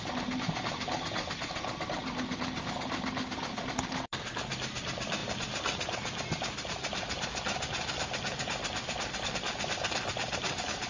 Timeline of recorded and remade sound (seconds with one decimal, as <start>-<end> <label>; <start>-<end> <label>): 0.0-10.9 recorded